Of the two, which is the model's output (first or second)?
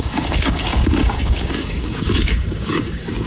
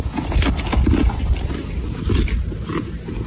first